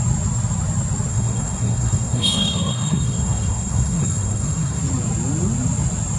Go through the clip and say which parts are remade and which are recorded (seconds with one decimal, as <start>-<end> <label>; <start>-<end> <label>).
0.0-1.1 recorded; 1.1-4.8 remade; 4.8-6.2 recorded